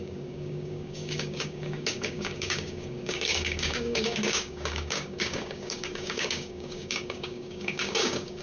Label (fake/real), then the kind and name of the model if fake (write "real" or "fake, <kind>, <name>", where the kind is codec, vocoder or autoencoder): fake, codec, DAC